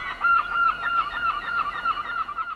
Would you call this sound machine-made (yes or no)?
yes